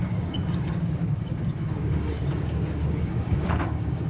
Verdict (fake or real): fake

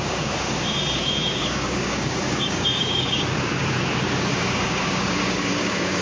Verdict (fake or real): fake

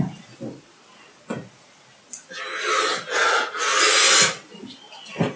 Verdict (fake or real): real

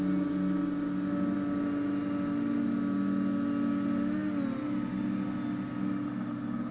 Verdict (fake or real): real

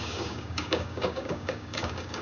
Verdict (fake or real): fake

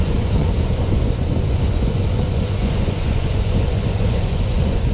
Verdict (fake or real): fake